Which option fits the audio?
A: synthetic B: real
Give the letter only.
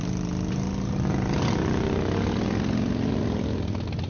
B